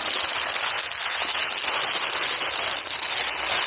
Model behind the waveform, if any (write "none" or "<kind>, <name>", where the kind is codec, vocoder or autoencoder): none